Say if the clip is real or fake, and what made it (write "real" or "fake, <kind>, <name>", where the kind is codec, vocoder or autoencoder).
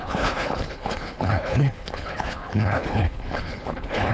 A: fake, codec, HILCodec